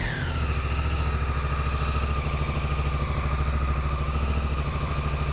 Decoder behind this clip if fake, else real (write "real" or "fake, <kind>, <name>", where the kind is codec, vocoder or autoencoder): real